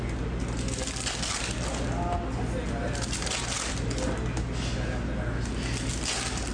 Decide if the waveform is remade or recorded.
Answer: recorded